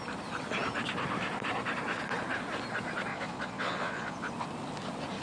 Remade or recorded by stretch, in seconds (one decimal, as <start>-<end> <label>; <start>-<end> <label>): 0.0-3.1 recorded; 3.1-4.3 remade; 4.3-5.2 recorded